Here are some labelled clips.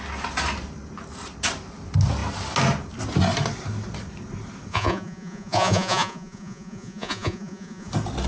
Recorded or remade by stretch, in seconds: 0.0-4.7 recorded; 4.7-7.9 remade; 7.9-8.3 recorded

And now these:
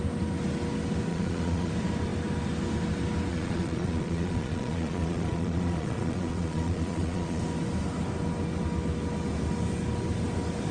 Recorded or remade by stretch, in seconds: 0.0-1.1 recorded; 1.1-1.7 remade; 1.7-3.3 recorded; 3.3-7.4 remade; 7.4-10.7 recorded

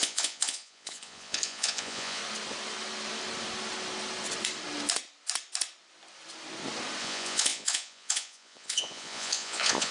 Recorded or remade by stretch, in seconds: 0.0-2.2 remade; 2.2-7.0 recorded; 7.0-9.9 remade